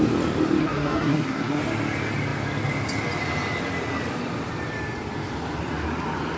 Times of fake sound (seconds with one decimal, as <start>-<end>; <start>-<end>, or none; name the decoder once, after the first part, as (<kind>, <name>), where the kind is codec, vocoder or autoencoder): 0.6-1.6 (codec, SNAC)